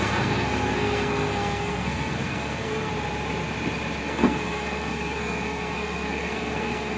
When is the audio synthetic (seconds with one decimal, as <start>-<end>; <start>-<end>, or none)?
0.0-2.9; 4.0-7.0